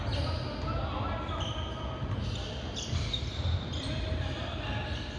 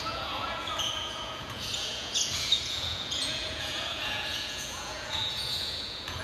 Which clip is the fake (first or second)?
second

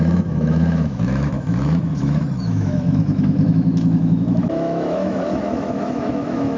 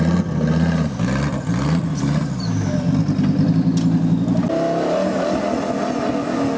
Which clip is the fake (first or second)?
first